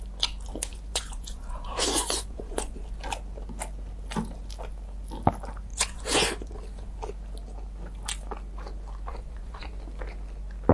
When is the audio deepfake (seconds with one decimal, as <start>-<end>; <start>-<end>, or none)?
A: 0.7-2.8; 5.7-6.5; 9.1-9.7

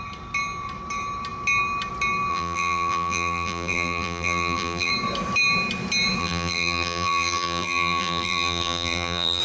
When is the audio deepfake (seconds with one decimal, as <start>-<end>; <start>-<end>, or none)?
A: 2.3-4.9; 6.2-9.4

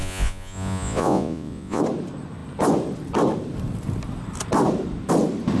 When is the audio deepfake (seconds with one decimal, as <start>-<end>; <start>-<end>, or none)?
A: 0.0-1.8

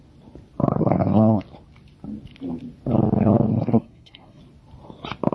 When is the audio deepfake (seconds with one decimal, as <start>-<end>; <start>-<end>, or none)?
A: 0.8-1.4; 3.5-4.4

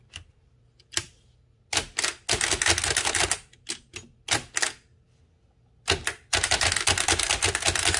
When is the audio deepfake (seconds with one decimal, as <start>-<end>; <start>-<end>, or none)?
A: none

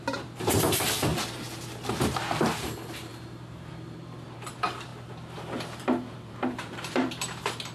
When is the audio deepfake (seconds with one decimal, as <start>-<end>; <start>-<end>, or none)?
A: 0.0-1.1; 2.4-4.9; 5.8-7.7